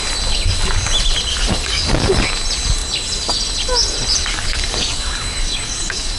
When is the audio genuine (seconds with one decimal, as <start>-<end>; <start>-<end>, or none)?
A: 0.0-1.3; 2.1-4.3